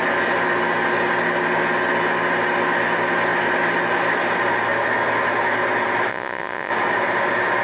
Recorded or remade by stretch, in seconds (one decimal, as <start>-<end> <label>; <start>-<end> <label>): 0.0-6.1 recorded; 6.1-6.7 remade; 6.7-7.6 recorded